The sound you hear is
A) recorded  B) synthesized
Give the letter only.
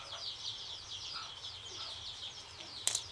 A